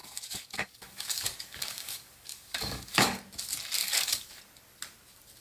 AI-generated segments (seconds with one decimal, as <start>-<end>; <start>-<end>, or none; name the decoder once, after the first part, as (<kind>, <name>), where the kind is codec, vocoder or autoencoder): 0.0-3.2 (codec, DAC); 3.8-4.4